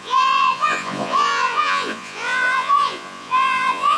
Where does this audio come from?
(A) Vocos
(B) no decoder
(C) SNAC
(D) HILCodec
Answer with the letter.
A